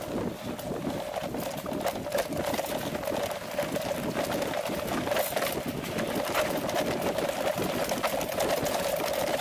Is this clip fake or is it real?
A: real